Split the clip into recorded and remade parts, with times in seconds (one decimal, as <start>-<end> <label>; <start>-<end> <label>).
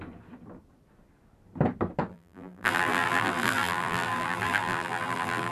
0.0-2.1 recorded; 2.1-5.5 remade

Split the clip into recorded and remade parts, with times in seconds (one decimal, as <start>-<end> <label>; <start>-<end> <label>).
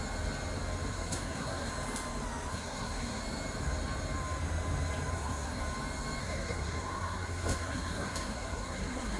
0.0-0.9 recorded; 0.9-1.7 remade; 1.7-2.5 recorded; 2.5-3.2 remade; 3.2-5.1 recorded; 5.1-5.6 remade; 5.6-6.2 recorded; 6.2-9.2 remade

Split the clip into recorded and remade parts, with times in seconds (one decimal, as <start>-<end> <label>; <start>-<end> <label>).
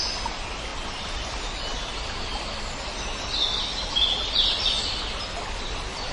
0.0-6.1 recorded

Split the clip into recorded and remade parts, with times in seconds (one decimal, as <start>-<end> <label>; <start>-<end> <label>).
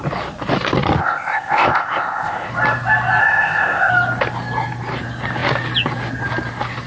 0.0-1.0 recorded; 1.0-2.5 remade; 2.5-3.2 recorded; 3.2-3.9 remade; 3.9-6.9 recorded